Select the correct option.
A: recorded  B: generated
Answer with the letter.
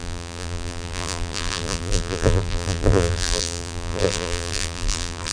B